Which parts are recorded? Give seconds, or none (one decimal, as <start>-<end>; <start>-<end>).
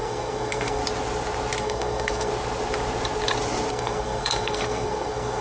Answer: 0.8-1.6; 2.3-3.7